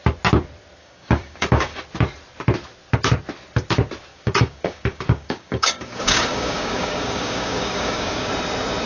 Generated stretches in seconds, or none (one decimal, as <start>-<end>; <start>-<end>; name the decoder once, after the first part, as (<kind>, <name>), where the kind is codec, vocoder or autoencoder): 0.8-1.8 (codec, DAC); 4.1-8.3